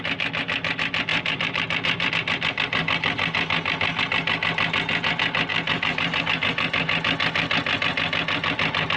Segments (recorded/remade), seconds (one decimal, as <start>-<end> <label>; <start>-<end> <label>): 0.0-1.1 recorded; 1.1-2.1 remade; 2.1-5.5 recorded; 5.5-6.2 remade; 6.2-9.0 recorded